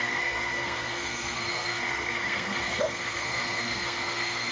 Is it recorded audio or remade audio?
remade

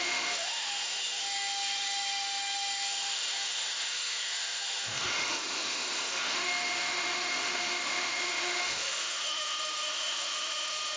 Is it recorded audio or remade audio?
remade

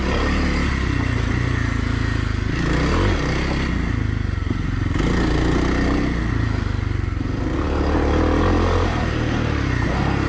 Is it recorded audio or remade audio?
recorded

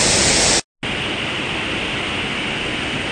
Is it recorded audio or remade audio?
recorded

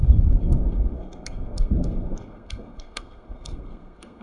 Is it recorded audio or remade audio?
remade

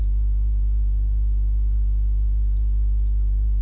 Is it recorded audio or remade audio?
remade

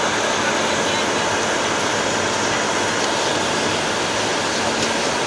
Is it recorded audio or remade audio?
recorded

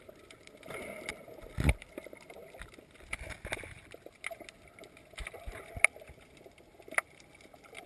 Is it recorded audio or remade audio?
recorded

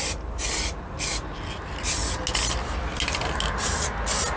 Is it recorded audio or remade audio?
recorded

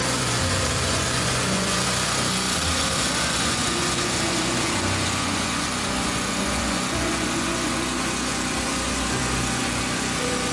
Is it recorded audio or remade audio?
remade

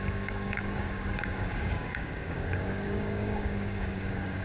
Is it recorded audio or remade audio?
remade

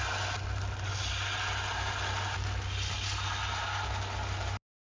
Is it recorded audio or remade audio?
recorded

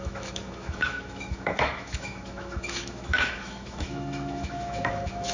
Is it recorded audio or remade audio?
remade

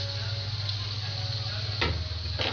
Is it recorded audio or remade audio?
recorded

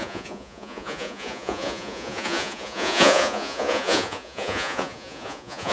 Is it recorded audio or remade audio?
remade